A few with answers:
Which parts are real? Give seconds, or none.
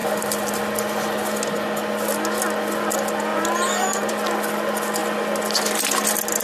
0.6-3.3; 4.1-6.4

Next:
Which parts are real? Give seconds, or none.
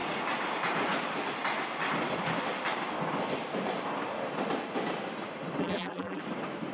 0.0-5.6; 6.2-6.7